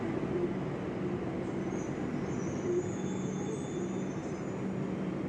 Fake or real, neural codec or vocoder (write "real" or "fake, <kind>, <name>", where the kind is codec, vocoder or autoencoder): real